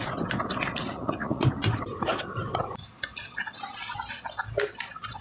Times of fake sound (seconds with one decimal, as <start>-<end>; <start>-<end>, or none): 0.8-1.4